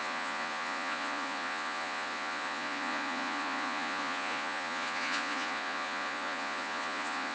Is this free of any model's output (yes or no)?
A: no